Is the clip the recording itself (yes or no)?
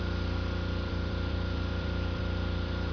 no